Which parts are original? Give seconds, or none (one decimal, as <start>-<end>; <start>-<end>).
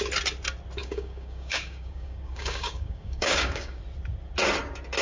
0.0-0.8; 3.8-5.0